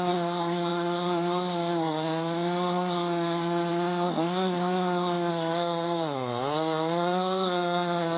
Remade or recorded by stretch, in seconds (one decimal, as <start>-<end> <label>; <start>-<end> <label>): 0.0-8.2 remade